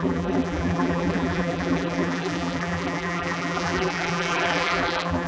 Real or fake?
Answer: fake